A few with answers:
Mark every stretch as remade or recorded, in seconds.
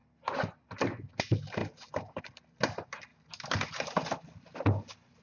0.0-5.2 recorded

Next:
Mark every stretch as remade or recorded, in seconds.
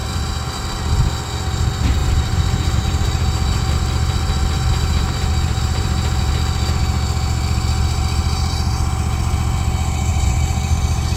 0.0-2.0 recorded; 2.0-6.2 remade; 6.2-8.2 recorded; 8.2-8.9 remade; 8.9-10.1 recorded; 10.1-11.2 remade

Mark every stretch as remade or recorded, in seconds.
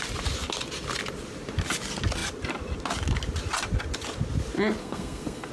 0.0-4.8 recorded; 4.8-5.5 remade